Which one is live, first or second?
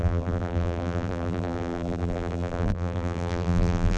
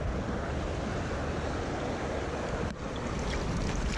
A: second